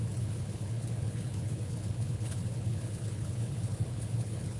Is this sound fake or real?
fake